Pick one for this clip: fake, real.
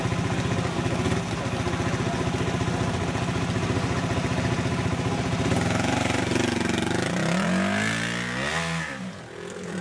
real